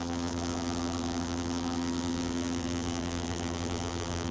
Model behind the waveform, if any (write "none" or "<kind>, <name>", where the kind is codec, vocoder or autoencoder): vocoder, BigVGAN v2